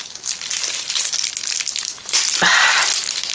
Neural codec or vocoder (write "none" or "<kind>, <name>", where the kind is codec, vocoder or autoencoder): none